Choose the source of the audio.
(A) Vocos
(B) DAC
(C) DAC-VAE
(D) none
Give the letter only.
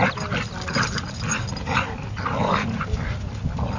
D